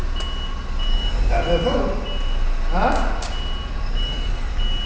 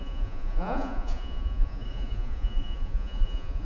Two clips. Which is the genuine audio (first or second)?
first